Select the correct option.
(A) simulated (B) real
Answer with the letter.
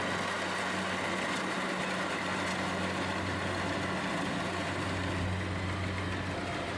B